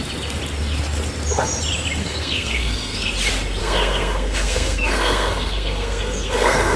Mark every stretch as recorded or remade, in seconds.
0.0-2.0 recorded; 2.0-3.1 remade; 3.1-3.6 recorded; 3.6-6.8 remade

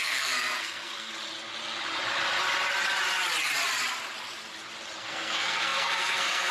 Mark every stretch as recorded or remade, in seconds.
0.0-1.1 remade; 1.1-5.0 recorded; 5.0-6.5 remade

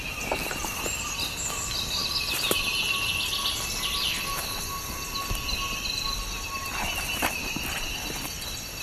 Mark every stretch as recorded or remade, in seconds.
0.0-8.8 recorded

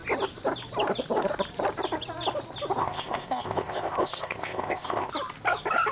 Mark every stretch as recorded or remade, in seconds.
0.0-2.8 recorded; 2.8-5.1 remade; 5.1-5.9 recorded

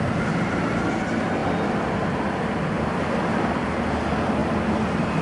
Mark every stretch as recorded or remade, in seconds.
0.0-5.2 recorded

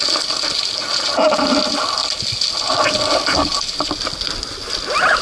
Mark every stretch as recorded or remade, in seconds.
0.0-5.2 recorded

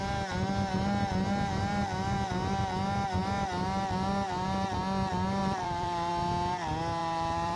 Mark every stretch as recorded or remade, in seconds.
0.0-5.4 recorded; 5.4-6.1 remade; 6.1-7.0 recorded; 7.0-7.6 remade

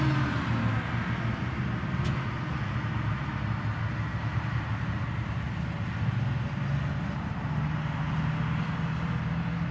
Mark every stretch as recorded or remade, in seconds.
0.0-4.1 recorded; 4.1-5.4 remade; 5.4-9.7 recorded